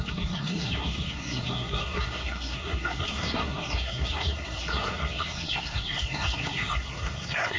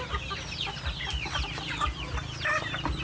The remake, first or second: first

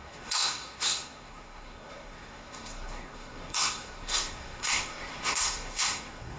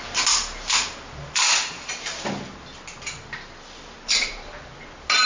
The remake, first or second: first